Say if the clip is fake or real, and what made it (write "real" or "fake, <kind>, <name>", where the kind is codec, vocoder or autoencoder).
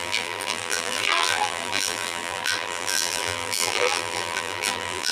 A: fake, vocoder, BigVGAN v2